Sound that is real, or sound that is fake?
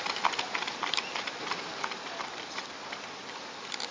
fake